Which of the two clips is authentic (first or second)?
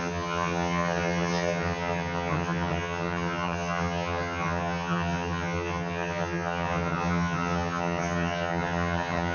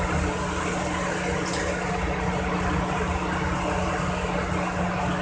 second